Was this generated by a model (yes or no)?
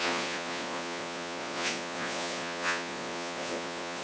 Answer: yes